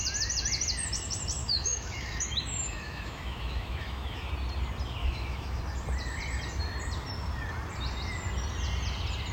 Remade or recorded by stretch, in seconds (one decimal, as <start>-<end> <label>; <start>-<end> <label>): 0.0-1.4 recorded; 1.4-4.3 remade; 4.3-5.0 recorded; 5.0-5.6 remade; 5.6-9.3 recorded